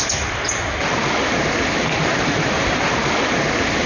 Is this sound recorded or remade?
recorded